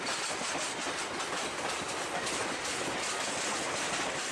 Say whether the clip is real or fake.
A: real